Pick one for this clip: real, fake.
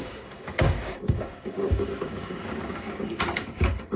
fake